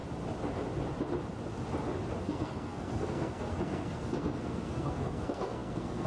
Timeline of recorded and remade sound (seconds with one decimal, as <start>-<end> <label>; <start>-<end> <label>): 0.0-2.2 recorded; 2.2-6.1 remade